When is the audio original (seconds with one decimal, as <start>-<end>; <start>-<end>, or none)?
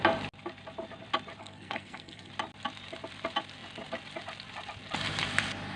0.0-1.4; 2.3-5.8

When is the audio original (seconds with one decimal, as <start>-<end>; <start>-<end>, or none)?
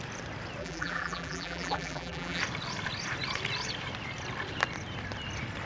0.0-0.6; 2.4-5.7